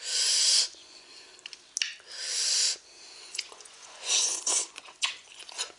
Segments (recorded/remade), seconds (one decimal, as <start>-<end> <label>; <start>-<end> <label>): 0.0-1.3 remade; 1.3-3.1 recorded; 3.1-5.8 remade